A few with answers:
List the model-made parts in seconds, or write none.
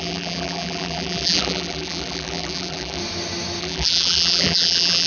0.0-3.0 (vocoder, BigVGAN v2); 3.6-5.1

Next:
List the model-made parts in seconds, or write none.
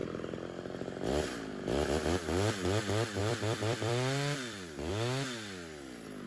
3.2-4.9 (vocoder, BigVGAN v2)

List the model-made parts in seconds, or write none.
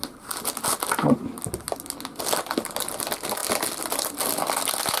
none